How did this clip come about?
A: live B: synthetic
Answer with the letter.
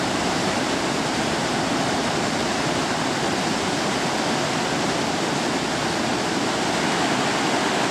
A